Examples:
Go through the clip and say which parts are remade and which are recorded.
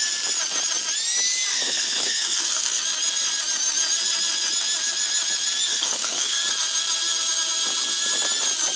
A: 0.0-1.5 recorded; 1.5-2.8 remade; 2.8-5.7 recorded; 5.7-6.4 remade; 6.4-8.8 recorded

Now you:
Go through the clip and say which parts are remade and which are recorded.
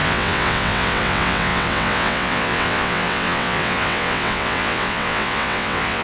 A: 0.0-6.0 remade